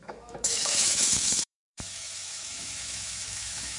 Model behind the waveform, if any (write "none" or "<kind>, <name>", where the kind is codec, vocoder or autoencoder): autoencoder, DAC-VAE